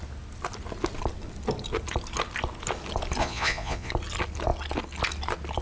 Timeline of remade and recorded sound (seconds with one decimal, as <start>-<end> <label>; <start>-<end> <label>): 0.0-3.2 recorded; 3.2-3.9 remade; 3.9-5.6 recorded

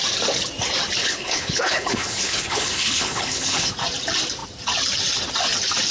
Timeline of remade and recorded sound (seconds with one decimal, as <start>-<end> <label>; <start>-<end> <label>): 0.0-1.0 recorded; 1.0-3.7 remade; 3.7-5.9 recorded

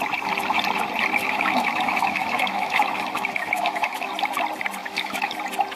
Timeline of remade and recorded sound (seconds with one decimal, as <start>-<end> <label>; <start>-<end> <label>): 0.0-1.2 recorded; 1.2-4.1 remade; 4.1-4.8 recorded; 4.8-5.3 remade; 5.3-5.7 recorded

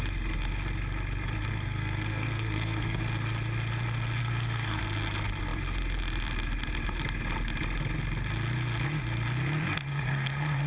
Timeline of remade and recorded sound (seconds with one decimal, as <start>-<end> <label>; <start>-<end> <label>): 0.0-1.5 recorded; 1.5-3.0 remade; 3.0-4.2 recorded; 4.2-4.8 remade; 4.8-9.9 recorded; 9.9-10.7 remade

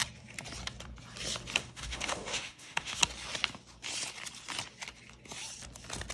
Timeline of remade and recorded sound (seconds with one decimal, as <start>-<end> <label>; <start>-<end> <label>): 0.0-1.6 recorded; 1.6-3.0 remade; 3.0-6.1 recorded

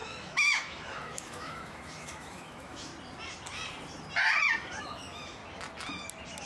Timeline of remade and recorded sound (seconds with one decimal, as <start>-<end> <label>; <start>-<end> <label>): 0.0-2.9 remade; 2.9-4.8 recorded; 4.8-5.4 remade; 5.4-6.5 recorded

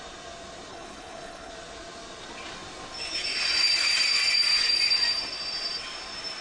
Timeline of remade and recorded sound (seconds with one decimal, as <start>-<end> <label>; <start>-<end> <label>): 0.0-0.7 recorded; 0.7-1.5 remade; 1.5-6.4 recorded

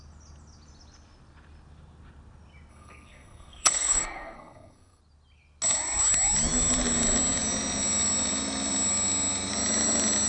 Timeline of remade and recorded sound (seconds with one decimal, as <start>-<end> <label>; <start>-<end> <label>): 0.0-2.7 recorded; 2.7-5.0 remade; 5.0-10.3 recorded